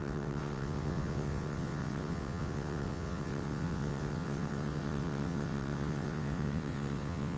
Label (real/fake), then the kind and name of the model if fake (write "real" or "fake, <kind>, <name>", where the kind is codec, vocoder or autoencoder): fake, vocoder, WaveNeXt